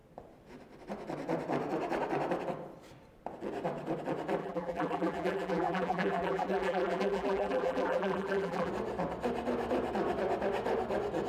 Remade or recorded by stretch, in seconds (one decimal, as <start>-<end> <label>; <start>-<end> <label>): 0.0-4.4 recorded; 4.4-8.7 remade; 8.7-11.3 recorded